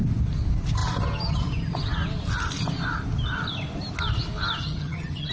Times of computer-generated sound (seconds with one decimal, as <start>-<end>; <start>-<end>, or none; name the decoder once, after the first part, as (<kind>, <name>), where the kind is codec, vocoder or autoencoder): 4.6-5.3 (vocoder, HiFi-GAN)